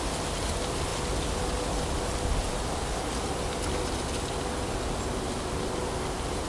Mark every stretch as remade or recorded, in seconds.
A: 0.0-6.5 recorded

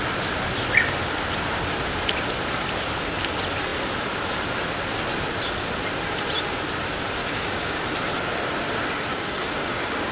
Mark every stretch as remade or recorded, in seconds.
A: 0.0-7.2 recorded; 7.2-7.8 remade; 7.8-9.1 recorded; 9.1-10.1 remade